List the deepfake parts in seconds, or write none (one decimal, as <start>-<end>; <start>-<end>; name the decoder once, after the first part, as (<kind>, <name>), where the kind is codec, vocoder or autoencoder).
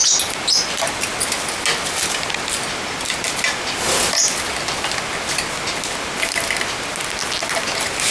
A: none